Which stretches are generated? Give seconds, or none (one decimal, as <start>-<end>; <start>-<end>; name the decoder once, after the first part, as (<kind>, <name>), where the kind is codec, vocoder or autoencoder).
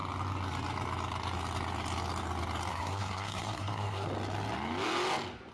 2.7-4.1 (codec, SNAC)